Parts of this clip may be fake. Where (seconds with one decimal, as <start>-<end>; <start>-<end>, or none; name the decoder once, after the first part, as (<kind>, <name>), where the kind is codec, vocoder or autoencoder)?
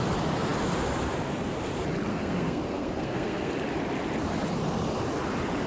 2.1-3.5 (codec, SNAC)